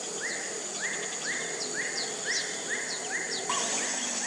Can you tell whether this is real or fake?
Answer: real